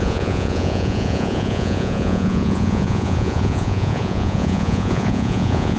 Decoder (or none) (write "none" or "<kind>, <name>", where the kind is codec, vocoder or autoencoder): vocoder, Vocos